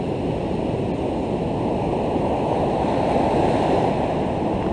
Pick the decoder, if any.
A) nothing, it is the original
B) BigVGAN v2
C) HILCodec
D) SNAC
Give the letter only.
A